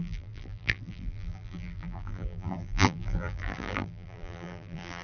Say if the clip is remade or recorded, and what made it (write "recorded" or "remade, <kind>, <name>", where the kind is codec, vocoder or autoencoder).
remade, vocoder, BigVGAN v2